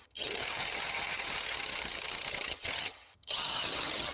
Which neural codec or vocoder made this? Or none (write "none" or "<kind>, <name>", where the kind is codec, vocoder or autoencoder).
vocoder, HiFi-GAN